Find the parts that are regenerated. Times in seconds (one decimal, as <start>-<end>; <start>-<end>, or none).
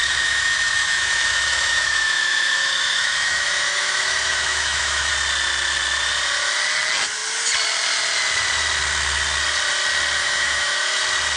0.0-5.1; 10.2-11.0